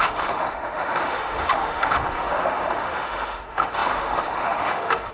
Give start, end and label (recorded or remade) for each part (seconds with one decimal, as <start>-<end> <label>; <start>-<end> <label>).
0.0-5.1 remade